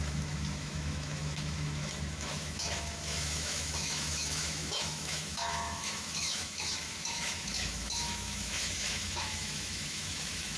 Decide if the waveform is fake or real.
fake